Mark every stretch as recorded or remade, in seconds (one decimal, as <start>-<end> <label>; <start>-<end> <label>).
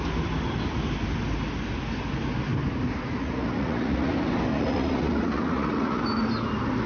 0.0-3.2 recorded; 3.2-4.1 remade; 4.1-4.5 recorded; 4.5-6.0 remade; 6.0-6.9 recorded